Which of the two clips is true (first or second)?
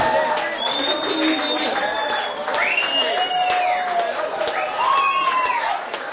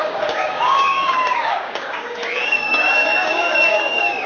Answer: first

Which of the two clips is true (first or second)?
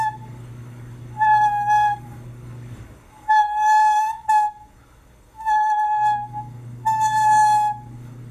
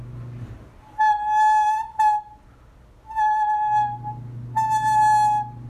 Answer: second